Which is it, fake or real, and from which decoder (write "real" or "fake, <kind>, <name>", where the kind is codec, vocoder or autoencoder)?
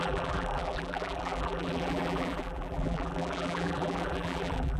fake, vocoder, BigVGAN v2